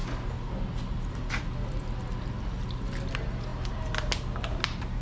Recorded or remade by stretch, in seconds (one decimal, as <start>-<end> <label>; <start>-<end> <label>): 0.0-5.0 recorded